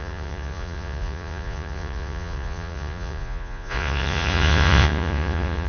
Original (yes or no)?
no